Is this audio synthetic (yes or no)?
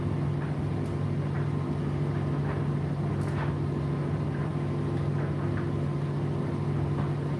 no